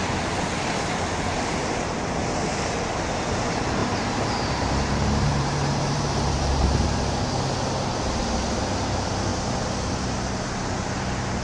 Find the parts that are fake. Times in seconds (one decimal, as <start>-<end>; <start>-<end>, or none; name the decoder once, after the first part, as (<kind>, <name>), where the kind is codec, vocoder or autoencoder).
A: 3.8-6.4 (vocoder, BigVGAN v2)